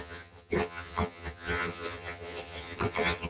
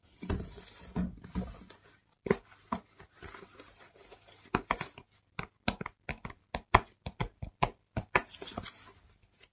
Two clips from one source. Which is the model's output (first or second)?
first